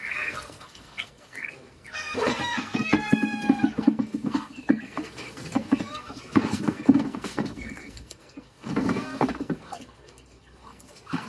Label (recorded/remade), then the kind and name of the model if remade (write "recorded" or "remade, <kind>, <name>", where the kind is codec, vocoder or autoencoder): remade, codec, SNAC